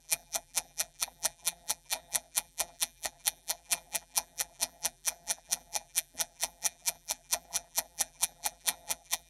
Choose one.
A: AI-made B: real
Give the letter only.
A